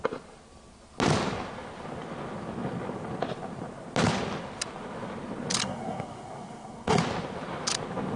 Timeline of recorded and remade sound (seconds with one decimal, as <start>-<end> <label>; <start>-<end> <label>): 0.0-5.6 recorded; 5.6-7.0 remade; 7.0-8.2 recorded